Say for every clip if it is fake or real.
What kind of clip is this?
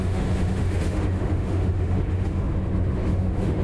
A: fake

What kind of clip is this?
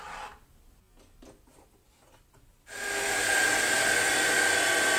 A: real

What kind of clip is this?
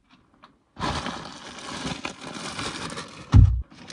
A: real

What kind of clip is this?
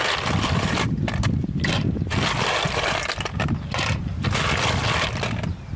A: real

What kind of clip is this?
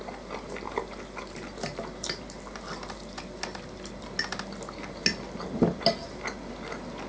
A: real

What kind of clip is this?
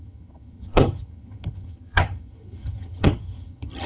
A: fake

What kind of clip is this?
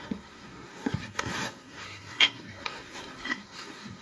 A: fake